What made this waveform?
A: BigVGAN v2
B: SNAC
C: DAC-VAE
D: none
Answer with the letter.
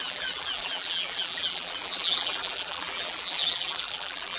A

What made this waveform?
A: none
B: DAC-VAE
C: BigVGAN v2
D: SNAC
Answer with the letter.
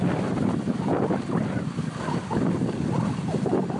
A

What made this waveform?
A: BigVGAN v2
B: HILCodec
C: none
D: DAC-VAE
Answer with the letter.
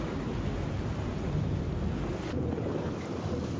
C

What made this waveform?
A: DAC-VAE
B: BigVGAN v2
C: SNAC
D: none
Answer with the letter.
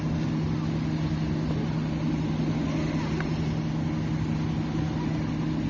D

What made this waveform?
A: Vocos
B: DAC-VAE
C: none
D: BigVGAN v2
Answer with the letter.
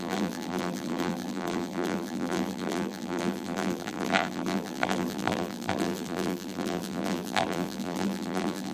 D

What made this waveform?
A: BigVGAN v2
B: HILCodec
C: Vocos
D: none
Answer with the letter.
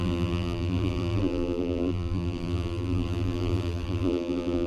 A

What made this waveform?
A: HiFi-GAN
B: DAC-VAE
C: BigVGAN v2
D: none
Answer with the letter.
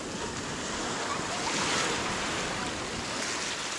D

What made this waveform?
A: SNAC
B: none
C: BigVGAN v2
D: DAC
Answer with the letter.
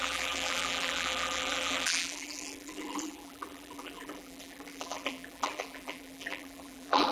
C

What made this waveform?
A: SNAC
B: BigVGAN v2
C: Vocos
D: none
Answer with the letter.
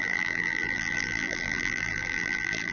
B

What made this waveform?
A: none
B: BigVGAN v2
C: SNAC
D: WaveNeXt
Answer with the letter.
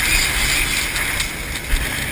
A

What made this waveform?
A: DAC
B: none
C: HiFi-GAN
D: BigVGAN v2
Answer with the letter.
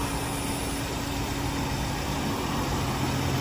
B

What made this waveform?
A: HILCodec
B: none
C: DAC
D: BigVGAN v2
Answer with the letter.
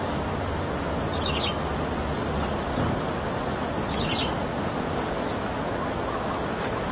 B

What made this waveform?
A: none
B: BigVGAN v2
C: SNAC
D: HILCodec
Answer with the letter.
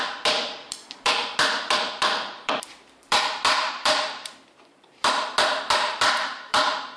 B